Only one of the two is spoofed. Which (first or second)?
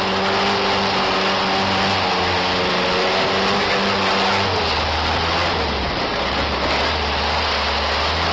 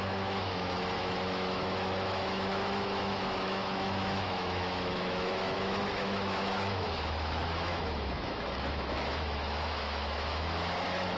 second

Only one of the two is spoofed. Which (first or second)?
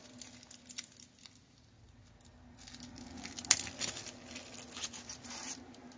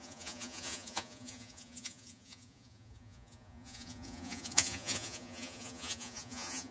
second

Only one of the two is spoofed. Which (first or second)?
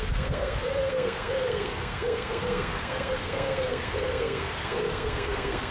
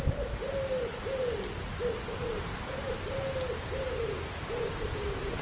first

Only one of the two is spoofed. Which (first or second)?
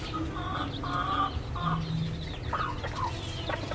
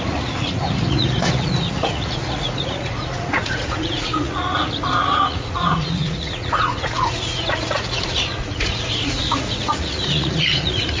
second